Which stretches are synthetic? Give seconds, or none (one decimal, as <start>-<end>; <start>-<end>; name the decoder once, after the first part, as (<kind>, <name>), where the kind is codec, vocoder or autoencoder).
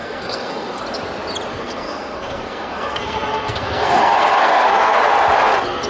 0.0-0.8 (codec, SNAC); 1.5-5.0